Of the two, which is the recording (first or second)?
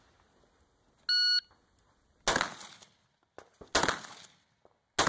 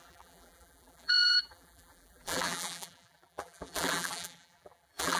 first